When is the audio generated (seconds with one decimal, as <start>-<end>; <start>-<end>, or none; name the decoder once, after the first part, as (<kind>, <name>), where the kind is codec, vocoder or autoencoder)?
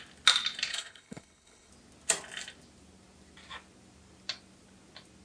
0.7-1.7 (codec, HILCodec)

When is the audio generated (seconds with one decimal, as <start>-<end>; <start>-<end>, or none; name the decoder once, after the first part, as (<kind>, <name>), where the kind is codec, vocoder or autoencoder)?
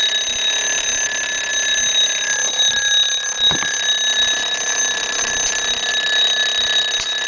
none